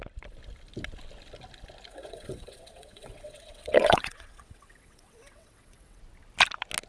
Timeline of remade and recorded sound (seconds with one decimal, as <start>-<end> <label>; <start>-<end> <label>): 0.0-1.9 recorded; 1.9-6.0 remade; 6.0-6.9 recorded